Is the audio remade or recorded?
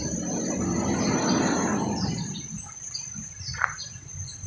recorded